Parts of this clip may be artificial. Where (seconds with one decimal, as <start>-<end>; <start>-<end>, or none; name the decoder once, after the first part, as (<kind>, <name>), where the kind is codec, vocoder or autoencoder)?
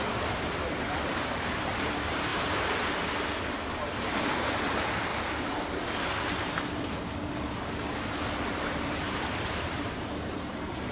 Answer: 0.0-2.3 (vocoder, BigVGAN v2); 3.9-5.1; 9.2-10.9